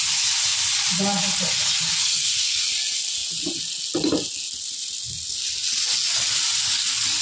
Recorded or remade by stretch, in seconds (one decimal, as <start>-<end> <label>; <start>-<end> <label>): 0.0-2.0 recorded; 2.0-2.7 remade; 2.7-7.2 recorded